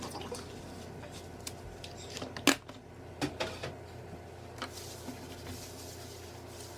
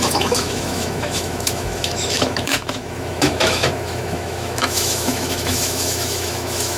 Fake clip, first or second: second